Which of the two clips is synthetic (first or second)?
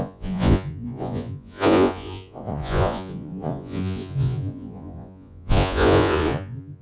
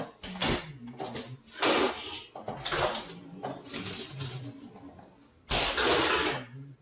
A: first